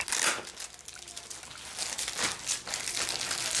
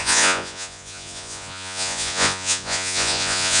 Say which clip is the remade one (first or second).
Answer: second